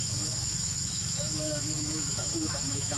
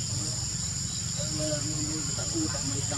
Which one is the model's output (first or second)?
first